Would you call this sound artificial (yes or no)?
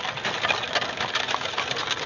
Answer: no